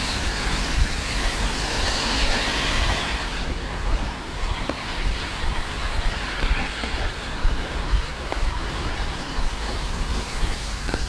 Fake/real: fake